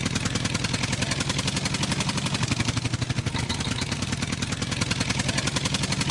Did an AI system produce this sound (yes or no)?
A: no